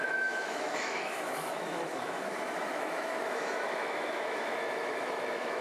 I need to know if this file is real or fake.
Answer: fake